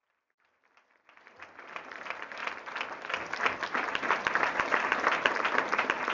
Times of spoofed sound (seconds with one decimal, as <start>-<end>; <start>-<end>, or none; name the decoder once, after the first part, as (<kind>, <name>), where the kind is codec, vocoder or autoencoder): none